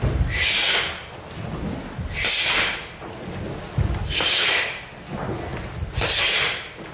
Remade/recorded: recorded